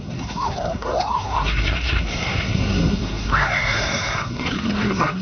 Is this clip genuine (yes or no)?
no